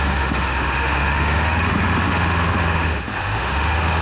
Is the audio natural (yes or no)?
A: no